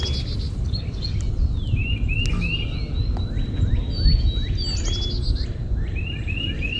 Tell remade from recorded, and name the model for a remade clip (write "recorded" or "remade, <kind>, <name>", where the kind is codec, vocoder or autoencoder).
recorded